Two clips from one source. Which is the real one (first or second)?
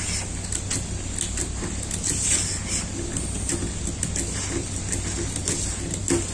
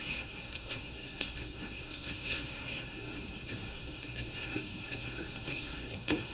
first